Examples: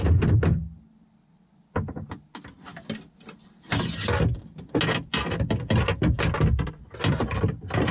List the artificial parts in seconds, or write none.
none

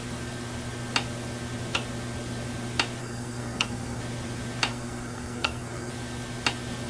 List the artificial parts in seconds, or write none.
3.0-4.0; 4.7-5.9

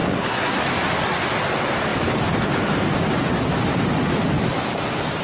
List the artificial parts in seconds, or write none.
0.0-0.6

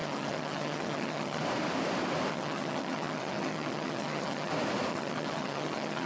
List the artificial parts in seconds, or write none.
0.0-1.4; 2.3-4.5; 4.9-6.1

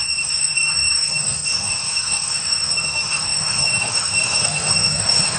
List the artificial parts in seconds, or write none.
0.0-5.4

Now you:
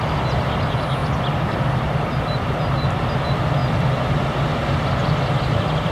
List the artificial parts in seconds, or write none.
1.0-3.1; 3.6-4.2

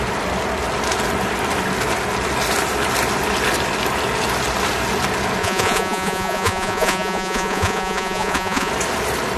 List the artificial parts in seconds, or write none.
5.4-8.7